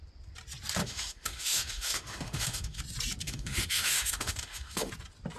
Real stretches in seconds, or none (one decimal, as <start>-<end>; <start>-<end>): 0.0-0.8; 2.8-3.2; 4.9-5.4